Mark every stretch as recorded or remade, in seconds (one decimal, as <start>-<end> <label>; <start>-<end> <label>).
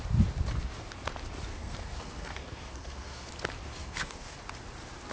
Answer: 0.0-1.5 recorded; 1.5-3.3 remade; 3.3-3.8 recorded; 3.8-4.4 remade; 4.4-5.1 recorded